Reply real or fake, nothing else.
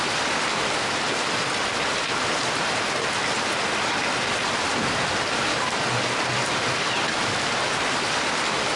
real